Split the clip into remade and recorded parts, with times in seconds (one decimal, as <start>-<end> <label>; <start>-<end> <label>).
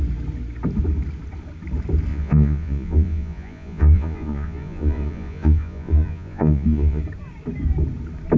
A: 0.0-2.1 recorded; 2.1-7.0 remade; 7.0-8.4 recorded